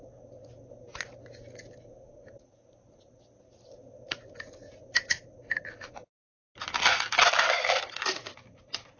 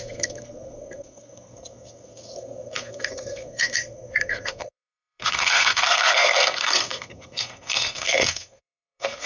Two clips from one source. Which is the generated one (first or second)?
second